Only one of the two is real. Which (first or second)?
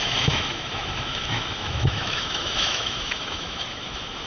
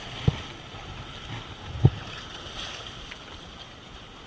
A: second